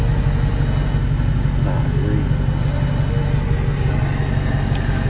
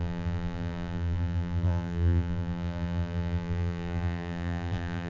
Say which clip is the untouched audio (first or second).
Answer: first